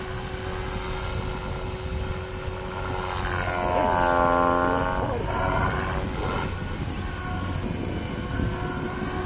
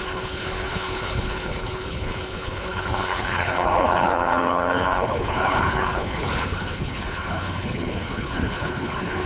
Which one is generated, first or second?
second